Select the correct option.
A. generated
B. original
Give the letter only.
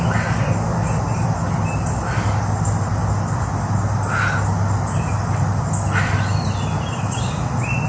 B